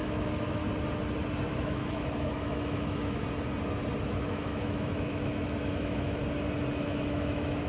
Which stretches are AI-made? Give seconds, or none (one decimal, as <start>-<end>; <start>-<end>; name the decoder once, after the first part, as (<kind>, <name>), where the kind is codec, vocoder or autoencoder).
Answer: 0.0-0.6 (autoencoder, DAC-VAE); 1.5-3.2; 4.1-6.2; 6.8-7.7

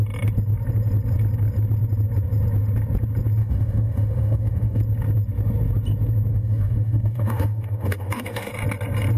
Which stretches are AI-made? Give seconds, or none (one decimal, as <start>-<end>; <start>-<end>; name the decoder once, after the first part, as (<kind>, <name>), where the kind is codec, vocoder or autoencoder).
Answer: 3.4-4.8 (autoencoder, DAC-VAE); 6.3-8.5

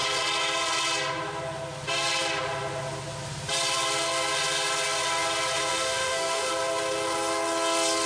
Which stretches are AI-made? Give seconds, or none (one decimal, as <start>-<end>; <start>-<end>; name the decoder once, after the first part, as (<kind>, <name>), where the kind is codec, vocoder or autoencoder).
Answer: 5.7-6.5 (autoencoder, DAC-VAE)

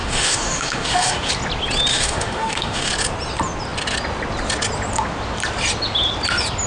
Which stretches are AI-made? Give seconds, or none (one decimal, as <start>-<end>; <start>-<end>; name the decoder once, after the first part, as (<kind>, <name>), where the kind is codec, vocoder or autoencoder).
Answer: 0.0-1.3 (autoencoder, DAC-VAE); 1.9-2.9